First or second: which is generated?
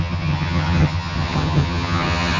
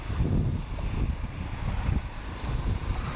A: first